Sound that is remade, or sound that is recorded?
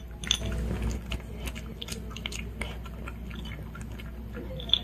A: recorded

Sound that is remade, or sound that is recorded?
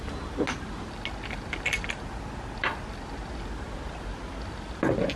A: recorded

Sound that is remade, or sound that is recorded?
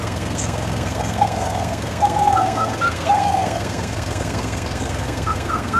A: remade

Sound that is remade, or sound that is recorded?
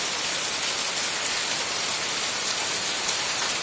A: recorded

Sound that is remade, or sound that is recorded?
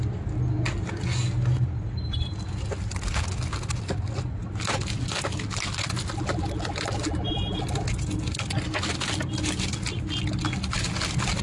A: recorded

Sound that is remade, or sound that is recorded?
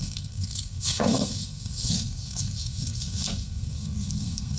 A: remade